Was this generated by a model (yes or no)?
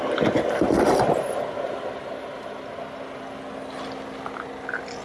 no